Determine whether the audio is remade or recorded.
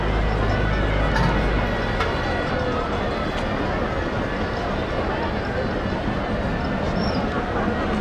recorded